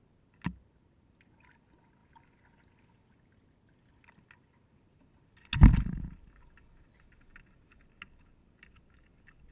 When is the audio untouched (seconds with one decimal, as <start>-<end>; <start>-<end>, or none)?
0.0-9.5